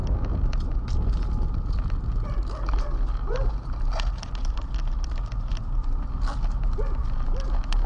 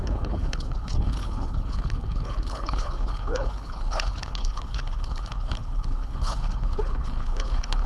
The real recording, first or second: first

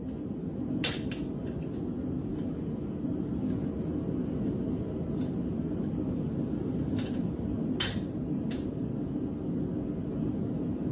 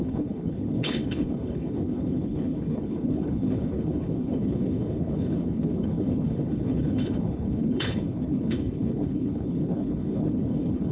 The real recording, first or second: first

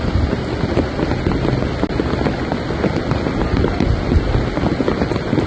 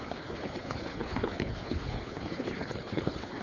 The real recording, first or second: first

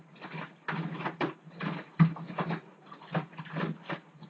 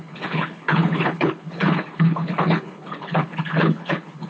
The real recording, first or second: first